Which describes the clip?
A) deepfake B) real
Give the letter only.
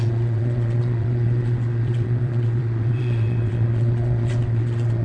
A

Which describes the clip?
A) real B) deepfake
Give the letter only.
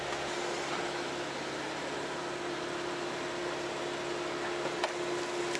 A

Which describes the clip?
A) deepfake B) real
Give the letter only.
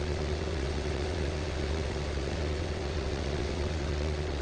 A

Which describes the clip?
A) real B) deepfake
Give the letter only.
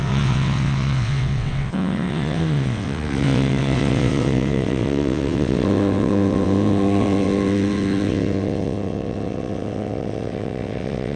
B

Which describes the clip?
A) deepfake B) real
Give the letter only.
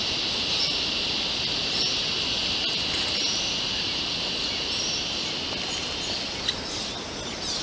B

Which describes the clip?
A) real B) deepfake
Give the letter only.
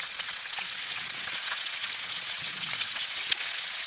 B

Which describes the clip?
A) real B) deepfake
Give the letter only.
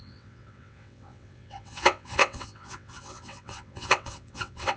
B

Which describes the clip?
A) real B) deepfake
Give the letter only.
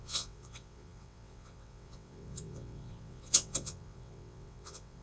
B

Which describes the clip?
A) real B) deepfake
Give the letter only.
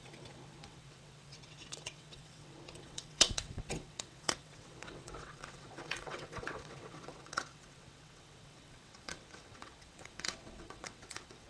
B